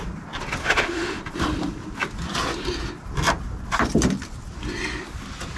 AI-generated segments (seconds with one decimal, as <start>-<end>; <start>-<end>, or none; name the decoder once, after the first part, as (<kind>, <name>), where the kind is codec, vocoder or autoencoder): 0.6-1.2 (autoencoder, DAC-VAE)